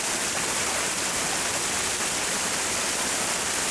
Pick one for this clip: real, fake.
real